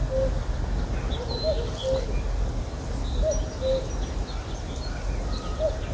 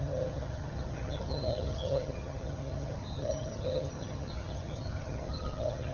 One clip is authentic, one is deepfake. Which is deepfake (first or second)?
second